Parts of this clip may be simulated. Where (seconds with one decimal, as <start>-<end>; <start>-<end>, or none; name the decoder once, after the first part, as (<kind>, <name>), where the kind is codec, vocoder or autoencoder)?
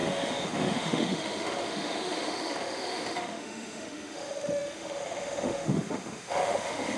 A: 0.0-7.0 (autoencoder, DAC-VAE)